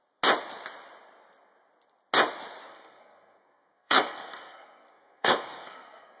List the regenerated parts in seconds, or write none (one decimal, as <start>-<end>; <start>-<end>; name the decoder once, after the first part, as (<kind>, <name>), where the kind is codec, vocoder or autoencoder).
2.7-6.2 (codec, SNAC)